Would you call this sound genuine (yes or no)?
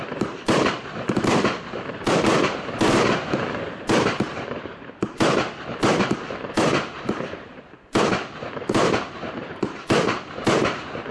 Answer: no